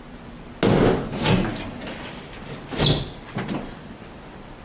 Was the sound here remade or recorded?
recorded